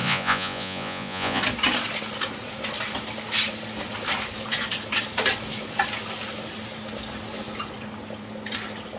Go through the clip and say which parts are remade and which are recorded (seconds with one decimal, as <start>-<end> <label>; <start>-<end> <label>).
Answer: 0.0-1.4 remade; 1.4-9.0 recorded